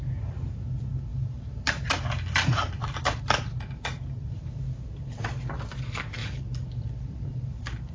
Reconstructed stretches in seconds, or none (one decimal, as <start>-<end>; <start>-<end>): 1.1-4.6; 6.2-7.4

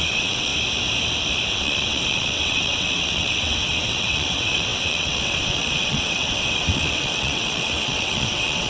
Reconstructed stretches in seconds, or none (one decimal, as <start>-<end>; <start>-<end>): 0.0-0.5; 1.5-8.7

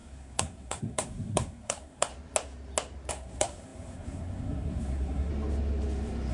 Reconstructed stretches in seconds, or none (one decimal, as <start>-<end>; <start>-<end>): 0.0-2.1; 3.1-5.3

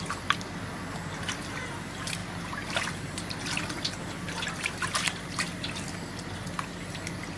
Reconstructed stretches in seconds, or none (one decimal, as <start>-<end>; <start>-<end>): none

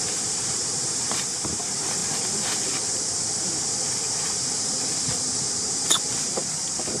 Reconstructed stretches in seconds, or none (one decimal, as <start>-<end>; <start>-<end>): 0.0-2.0; 4.6-6.4

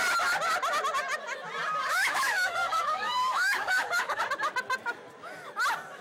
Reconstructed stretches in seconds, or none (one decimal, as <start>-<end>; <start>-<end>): 1.8-4.2

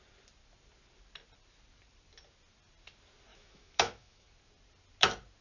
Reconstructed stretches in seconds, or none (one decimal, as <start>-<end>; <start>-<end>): 3.3-4.3